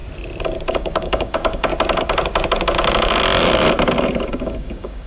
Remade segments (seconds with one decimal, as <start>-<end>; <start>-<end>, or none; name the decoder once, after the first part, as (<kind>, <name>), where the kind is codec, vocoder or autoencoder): 0.7-1.7 (codec, DAC); 4.3-5.1